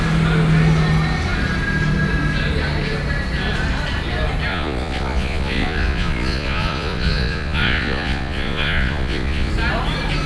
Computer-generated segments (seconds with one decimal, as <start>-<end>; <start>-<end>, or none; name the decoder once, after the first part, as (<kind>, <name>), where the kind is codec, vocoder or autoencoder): 4.5-9.5 (vocoder, Vocos)